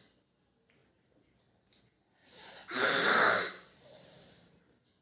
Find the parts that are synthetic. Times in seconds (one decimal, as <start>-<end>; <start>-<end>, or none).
0.8-3.8